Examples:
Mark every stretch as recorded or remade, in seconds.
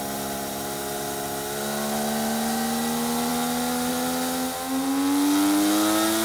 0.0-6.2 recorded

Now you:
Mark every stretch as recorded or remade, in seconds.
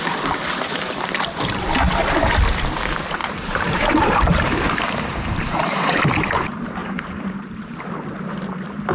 0.0-3.2 recorded; 3.2-6.0 remade; 6.0-6.8 recorded; 6.8-7.9 remade; 7.9-8.9 recorded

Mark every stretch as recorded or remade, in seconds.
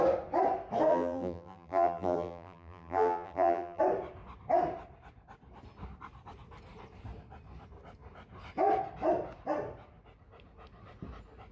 0.0-0.9 recorded; 0.9-3.8 remade; 3.8-11.5 recorded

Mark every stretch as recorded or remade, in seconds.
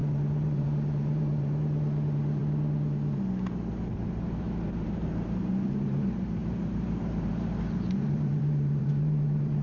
0.0-2.4 remade; 2.4-3.9 recorded; 3.9-9.6 remade